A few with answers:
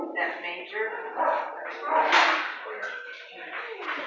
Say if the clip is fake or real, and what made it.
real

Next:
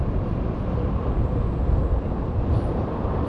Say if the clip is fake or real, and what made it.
fake, vocoder, BigVGAN v2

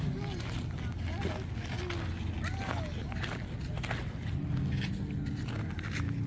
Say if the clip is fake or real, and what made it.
real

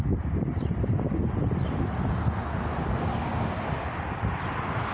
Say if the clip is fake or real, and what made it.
real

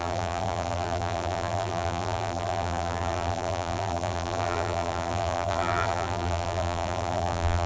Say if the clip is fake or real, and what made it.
fake, vocoder, BigVGAN v2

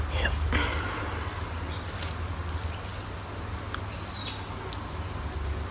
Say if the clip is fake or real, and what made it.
real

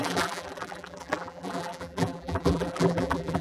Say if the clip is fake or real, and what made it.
fake, vocoder, BigVGAN v2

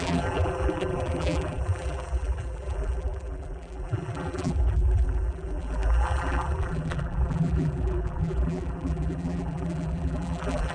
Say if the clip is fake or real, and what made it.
fake, vocoder, BigVGAN v2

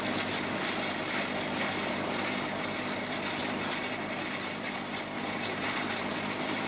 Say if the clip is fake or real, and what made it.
real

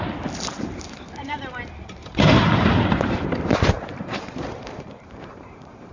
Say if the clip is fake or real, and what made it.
fake, vocoder, BigVGAN v2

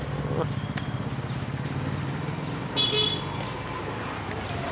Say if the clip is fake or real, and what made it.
real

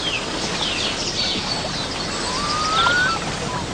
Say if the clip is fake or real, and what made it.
real